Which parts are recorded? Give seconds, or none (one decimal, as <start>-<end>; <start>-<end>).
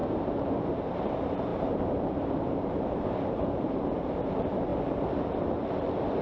4.7-6.2